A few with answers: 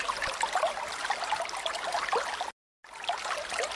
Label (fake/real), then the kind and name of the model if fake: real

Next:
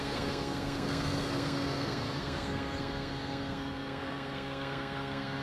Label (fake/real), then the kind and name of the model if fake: fake, codec, SNAC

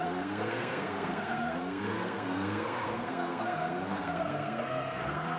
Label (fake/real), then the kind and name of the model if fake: fake, codec, SNAC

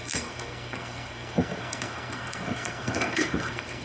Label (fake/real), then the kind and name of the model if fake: fake, codec, SNAC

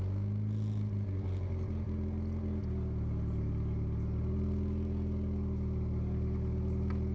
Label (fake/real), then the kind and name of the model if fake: real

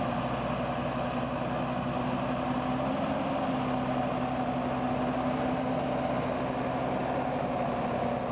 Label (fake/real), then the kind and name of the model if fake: real